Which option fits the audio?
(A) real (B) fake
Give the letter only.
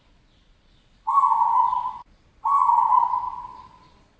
B